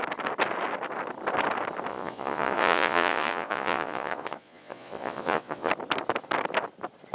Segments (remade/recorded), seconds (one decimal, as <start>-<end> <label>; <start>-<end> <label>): 0.0-1.9 recorded; 1.9-5.7 remade; 5.7-7.1 recorded